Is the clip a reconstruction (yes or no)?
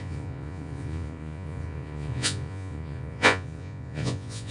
yes